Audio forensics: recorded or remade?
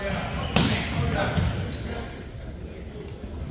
recorded